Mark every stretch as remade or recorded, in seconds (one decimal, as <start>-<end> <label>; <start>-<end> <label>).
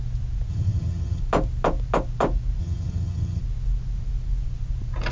0.0-0.5 recorded; 0.5-1.2 remade; 1.2-2.6 recorded; 2.6-3.4 remade; 3.4-5.1 recorded